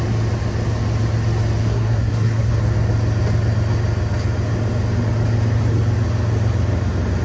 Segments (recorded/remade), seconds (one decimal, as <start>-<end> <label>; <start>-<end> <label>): 0.0-1.6 recorded; 1.6-2.5 remade; 2.5-7.2 recorded